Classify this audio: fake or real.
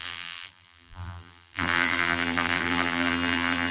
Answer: fake